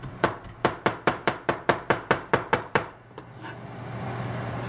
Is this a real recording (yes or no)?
no